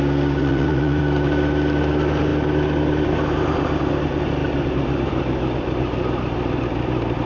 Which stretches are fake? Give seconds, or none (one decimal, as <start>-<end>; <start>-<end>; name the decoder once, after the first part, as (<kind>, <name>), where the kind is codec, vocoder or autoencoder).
0.4-1.0 (vocoder, Vocos)